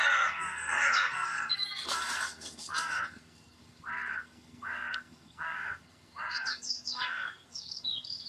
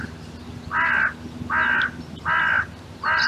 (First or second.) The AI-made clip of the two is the first